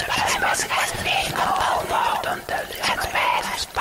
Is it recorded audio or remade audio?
recorded